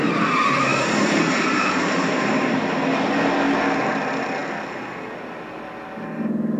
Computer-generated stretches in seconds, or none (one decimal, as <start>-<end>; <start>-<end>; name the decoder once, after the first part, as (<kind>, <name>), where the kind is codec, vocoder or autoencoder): 0.7-2.6 (vocoder, BigVGAN v2)